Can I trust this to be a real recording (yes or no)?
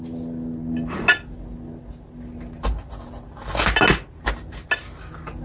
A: yes